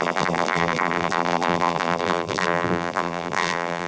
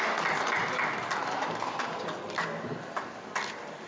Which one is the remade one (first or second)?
first